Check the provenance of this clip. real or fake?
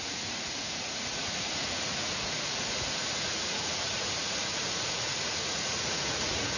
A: fake